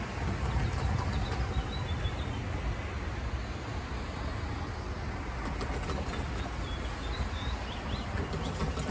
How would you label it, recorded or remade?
recorded